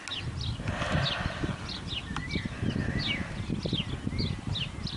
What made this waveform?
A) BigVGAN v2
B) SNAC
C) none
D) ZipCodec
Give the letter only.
C